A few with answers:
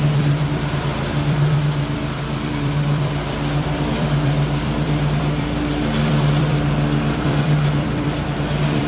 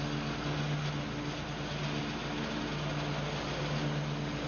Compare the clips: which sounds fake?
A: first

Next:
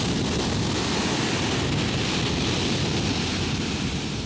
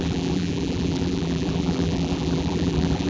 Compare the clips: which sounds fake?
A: second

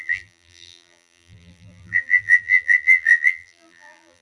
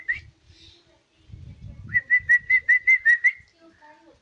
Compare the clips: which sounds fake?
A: first